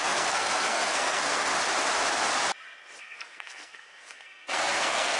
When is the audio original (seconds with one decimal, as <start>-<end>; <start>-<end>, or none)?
1.5-3.0